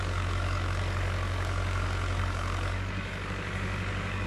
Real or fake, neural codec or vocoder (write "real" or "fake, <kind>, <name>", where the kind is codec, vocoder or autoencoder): fake, codec, DAC